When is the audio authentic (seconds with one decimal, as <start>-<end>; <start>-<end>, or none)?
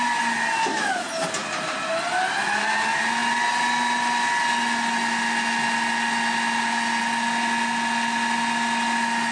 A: 0.0-9.3